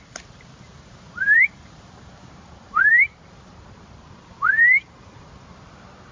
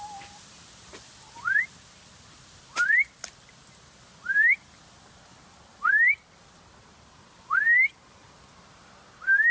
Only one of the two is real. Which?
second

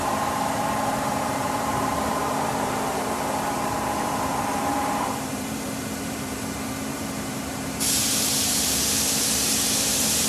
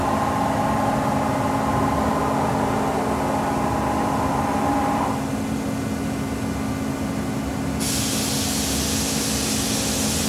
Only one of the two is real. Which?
second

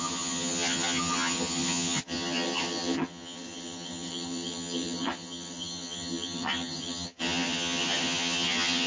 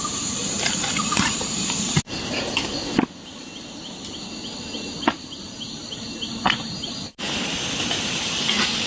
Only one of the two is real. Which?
second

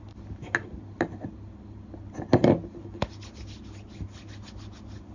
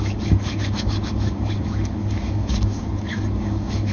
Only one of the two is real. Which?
first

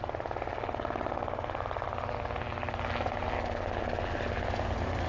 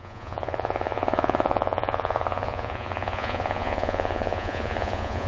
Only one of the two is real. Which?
first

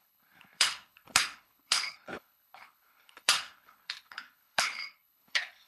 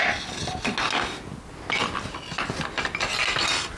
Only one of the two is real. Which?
second